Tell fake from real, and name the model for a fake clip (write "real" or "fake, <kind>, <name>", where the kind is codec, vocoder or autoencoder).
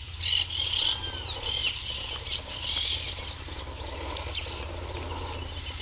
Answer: real